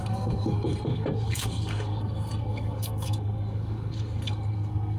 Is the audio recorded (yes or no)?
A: no